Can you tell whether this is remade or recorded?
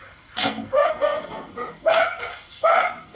remade